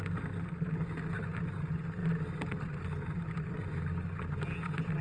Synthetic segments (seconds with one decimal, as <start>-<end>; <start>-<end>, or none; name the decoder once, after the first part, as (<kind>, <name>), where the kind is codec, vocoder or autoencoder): 2.0-3.5 (vocoder, BigVGAN v2)